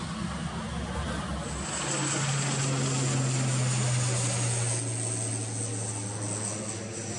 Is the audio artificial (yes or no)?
no